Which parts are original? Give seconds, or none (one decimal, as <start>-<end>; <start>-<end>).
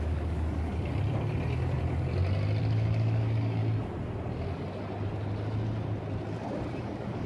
0.7-2.6; 3.6-6.8